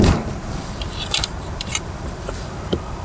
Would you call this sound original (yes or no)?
no